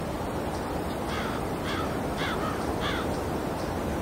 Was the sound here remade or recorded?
recorded